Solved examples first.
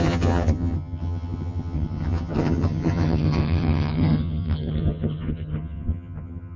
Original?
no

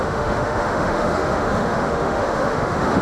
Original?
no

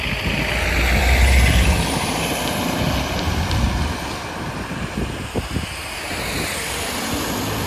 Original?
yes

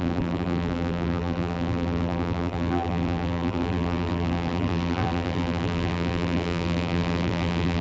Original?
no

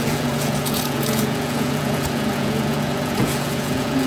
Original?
no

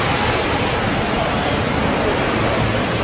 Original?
yes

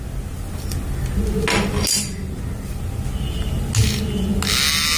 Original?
yes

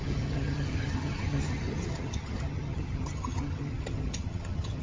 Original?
no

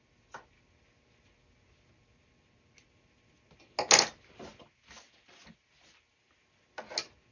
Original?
yes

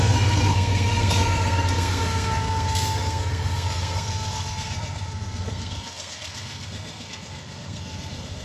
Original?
no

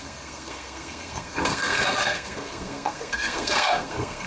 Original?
no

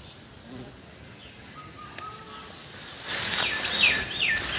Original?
yes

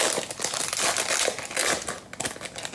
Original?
yes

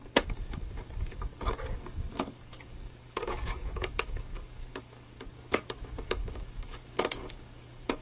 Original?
no